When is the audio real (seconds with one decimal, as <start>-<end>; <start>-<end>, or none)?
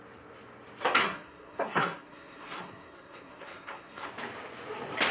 0.0-1.0; 4.1-5.1